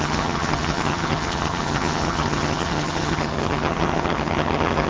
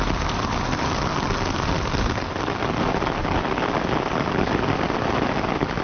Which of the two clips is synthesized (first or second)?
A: first